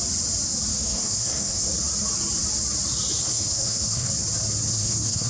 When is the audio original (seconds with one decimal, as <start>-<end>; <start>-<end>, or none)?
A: 0.0-0.7; 1.7-3.2; 4.1-4.7